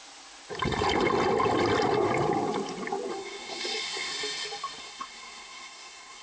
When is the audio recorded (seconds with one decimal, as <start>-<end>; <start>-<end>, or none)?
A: 0.0-3.1; 4.1-4.8